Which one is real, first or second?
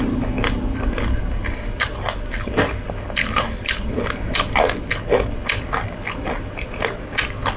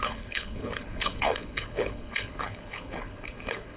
first